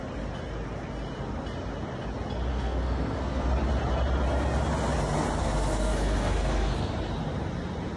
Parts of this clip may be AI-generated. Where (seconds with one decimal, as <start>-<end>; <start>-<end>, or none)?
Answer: 2.5-3.5; 5.4-6.9

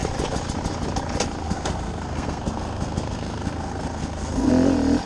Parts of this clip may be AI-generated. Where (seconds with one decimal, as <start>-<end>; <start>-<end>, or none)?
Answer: 1.4-4.5

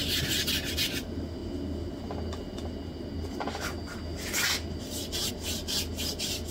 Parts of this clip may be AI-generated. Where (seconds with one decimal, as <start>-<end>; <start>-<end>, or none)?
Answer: none